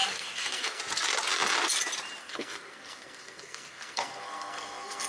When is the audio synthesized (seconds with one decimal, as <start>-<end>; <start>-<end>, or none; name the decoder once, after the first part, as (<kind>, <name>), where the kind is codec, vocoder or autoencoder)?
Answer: 0.0-0.8 (codec, SNAC); 2.2-5.1